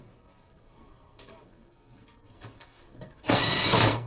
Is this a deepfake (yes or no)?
yes